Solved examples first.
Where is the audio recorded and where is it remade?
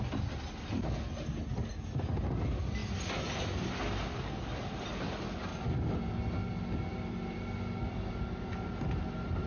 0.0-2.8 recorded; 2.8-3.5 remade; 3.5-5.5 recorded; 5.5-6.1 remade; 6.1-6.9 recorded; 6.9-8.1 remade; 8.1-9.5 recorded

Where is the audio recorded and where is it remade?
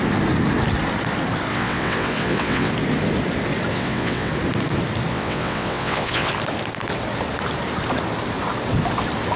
0.0-1.5 recorded; 1.5-2.7 remade; 2.7-3.7 recorded; 3.7-4.3 remade; 4.3-5.1 recorded; 5.1-6.3 remade; 6.3-9.4 recorded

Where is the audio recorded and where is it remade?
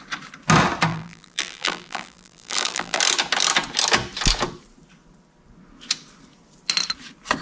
0.0-0.9 recorded; 0.9-3.0 remade; 3.0-7.4 recorded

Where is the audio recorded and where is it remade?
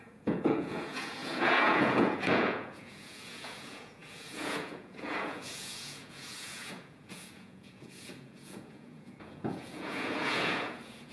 0.0-11.1 remade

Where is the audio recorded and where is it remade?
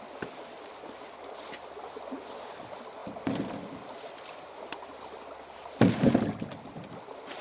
0.0-7.4 recorded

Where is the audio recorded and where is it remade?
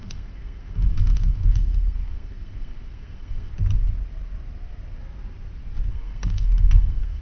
0.0-3.5 remade; 3.5-5.9 recorded; 5.9-7.2 remade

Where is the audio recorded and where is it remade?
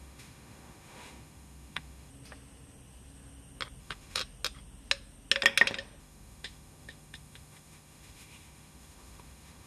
0.0-2.1 remade; 2.1-3.8 recorded; 3.8-4.2 remade; 4.2-6.0 recorded; 6.0-9.7 remade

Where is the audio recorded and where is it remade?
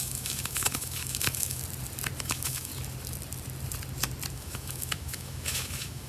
0.0-1.6 remade; 1.6-2.2 recorded; 2.2-2.7 remade; 2.7-4.3 recorded; 4.3-6.1 remade